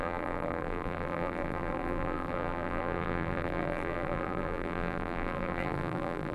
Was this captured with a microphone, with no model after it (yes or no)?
no